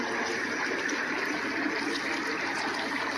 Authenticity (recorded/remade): recorded